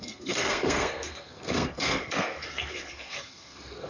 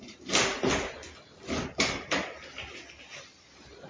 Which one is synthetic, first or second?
first